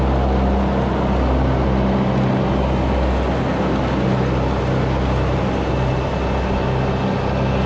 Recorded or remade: recorded